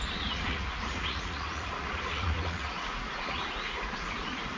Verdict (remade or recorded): remade